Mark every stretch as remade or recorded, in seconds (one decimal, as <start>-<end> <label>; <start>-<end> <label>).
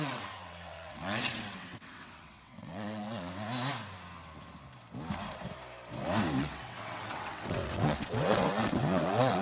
0.0-3.3 remade; 3.3-6.4 recorded; 6.4-9.4 remade